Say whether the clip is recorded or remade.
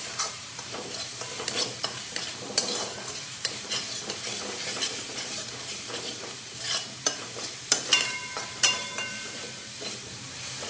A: remade